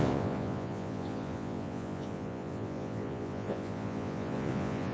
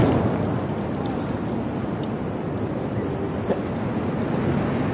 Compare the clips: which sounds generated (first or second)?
first